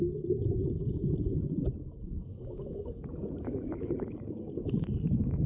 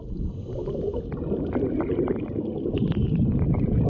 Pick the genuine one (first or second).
second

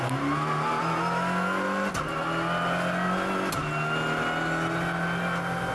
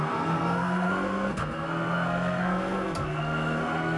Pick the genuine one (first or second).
first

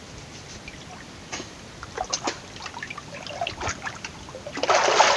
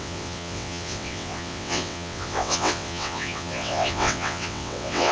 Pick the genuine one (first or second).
first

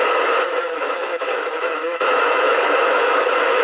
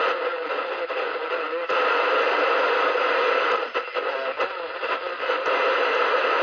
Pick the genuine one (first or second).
second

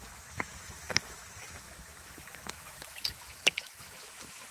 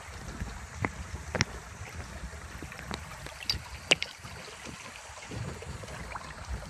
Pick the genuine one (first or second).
second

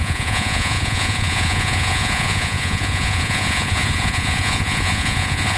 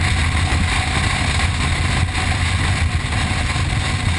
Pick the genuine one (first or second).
second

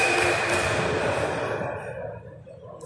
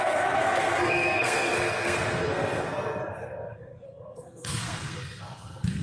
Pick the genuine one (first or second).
first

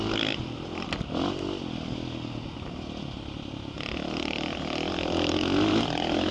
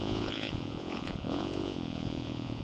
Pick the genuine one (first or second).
first